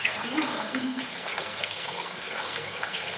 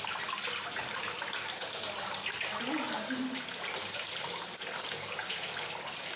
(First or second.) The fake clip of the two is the first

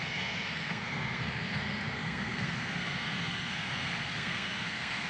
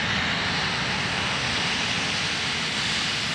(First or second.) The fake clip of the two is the first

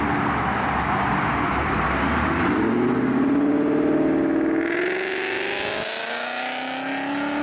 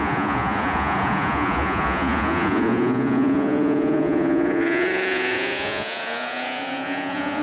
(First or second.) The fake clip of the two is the second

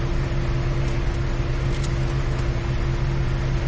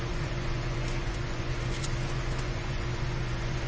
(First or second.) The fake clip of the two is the second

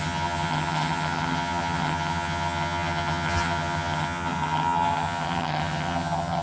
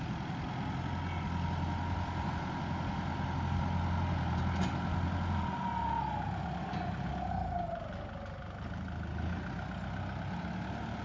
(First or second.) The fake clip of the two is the first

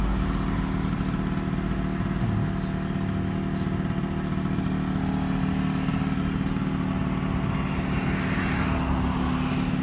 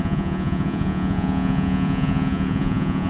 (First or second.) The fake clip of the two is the second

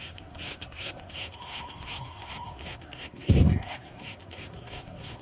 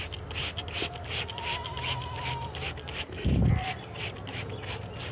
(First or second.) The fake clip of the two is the first